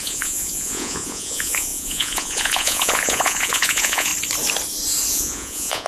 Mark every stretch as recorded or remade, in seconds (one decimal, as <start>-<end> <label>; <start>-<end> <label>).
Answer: 0.0-4.1 remade; 4.1-5.1 recorded; 5.1-5.9 remade